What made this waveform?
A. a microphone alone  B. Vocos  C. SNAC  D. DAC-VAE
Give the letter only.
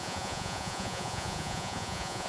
B